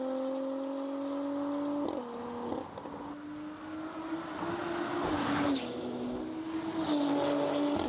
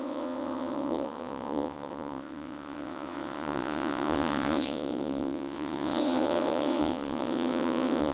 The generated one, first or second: second